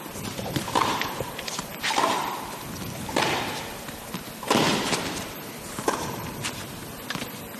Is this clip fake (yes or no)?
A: yes